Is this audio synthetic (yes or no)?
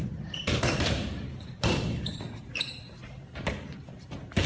yes